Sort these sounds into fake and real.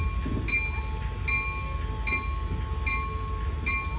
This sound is real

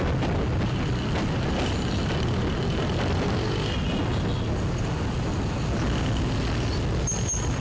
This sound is real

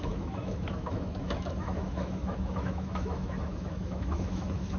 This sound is fake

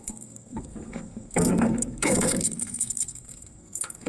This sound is fake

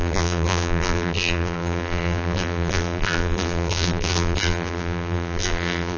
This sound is fake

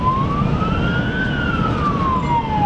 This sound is real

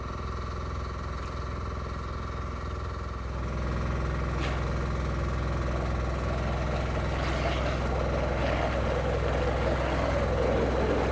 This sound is real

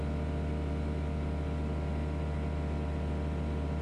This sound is real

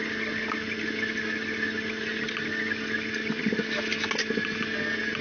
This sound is real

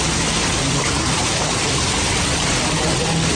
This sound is real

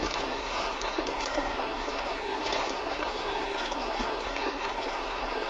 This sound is fake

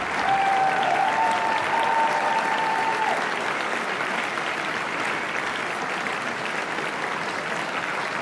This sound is fake